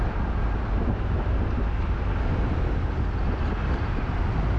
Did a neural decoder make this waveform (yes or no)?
no